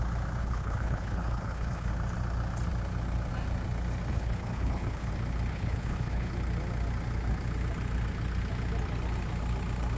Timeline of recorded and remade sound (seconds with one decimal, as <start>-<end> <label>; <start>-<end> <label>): 0.0-0.4 recorded; 0.4-1.9 remade; 1.9-4.1 recorded; 4.1-5.1 remade; 5.1-5.5 recorded; 5.5-6.3 remade; 6.3-10.0 recorded